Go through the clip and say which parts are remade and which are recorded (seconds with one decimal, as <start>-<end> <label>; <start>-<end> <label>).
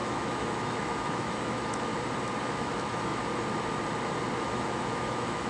0.0-1.9 remade; 1.9-2.4 recorded; 2.4-3.1 remade; 3.1-4.4 recorded; 4.4-5.5 remade